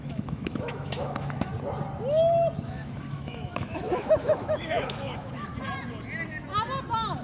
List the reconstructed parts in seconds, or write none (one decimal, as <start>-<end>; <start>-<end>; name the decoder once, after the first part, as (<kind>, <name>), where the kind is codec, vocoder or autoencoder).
0.0-1.5 (autoencoder, DAC-VAE); 2.6-5.5